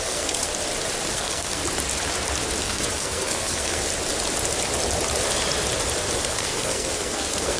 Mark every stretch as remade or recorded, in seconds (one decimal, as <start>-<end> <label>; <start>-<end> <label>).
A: 0.0-0.5 remade; 0.5-1.1 recorded; 1.1-1.6 remade; 1.6-2.6 recorded; 2.6-3.9 remade; 3.9-6.2 recorded; 6.2-7.6 remade